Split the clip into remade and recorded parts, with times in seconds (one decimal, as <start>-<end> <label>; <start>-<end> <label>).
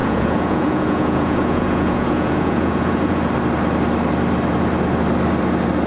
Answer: 0.0-3.2 remade; 3.2-5.9 recorded